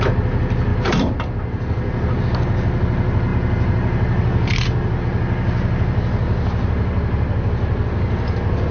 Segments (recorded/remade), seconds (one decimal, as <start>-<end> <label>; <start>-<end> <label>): 0.0-8.7 recorded